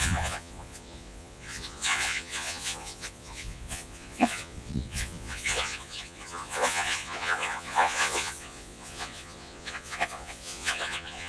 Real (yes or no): no